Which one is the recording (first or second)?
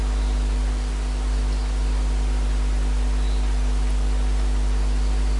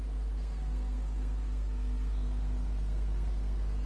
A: first